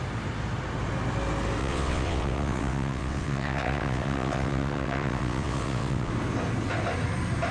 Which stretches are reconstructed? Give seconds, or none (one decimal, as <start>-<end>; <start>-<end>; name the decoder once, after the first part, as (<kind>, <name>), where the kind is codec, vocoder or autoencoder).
1.6-6.1 (vocoder, WaveNeXt)